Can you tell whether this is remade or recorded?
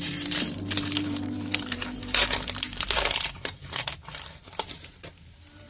remade